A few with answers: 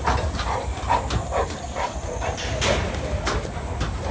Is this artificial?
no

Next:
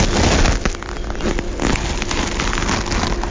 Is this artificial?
no